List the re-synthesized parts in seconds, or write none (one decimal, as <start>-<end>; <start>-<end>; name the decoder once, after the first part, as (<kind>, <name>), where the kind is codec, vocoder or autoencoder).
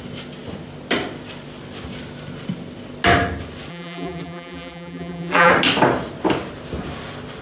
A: 3.7-5.5 (vocoder, BigVGAN v2)